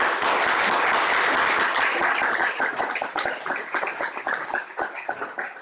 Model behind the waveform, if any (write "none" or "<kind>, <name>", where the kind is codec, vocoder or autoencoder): none